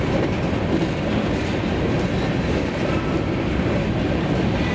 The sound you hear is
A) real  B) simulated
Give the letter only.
A